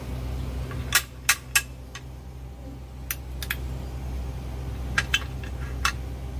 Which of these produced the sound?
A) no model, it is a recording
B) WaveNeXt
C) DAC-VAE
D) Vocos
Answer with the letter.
A